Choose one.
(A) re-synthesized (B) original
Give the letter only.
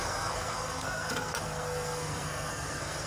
A